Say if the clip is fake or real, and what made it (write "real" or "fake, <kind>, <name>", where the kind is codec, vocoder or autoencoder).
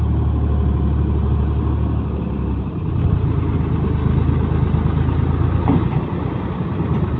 real